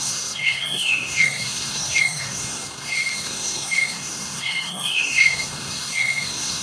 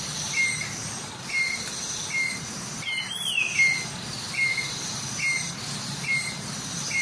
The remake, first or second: first